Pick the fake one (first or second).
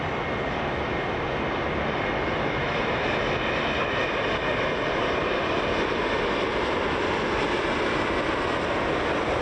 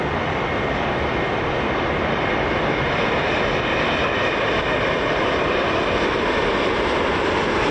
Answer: second